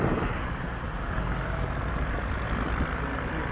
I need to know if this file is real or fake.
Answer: real